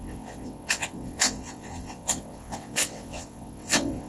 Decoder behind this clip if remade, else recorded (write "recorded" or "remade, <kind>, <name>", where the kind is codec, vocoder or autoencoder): remade, vocoder, WaveNeXt